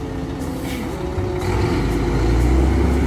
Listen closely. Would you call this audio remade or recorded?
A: recorded